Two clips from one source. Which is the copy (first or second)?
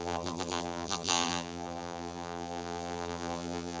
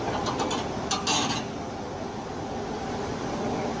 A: first